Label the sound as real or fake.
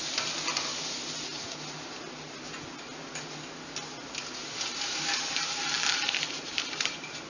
real